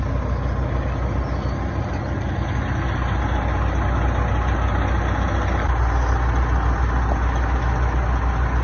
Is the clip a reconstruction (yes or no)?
no